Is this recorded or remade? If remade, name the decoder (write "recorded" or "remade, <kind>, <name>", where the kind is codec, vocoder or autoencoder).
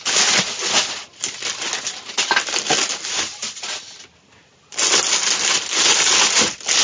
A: recorded